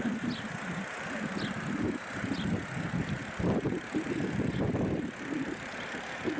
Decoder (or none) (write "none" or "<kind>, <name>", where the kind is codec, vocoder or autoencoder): none